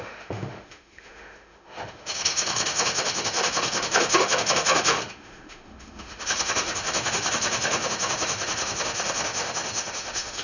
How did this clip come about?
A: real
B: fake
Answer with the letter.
B